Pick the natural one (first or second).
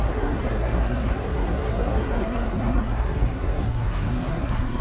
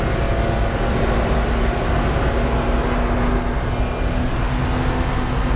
second